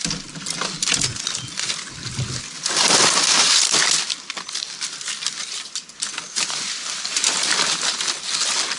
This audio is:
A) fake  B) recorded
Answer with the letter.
B